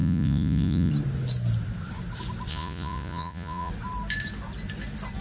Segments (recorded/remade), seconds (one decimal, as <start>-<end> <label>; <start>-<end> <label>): 0.0-0.9 remade; 0.9-2.5 recorded; 2.5-3.7 remade; 3.7-5.2 recorded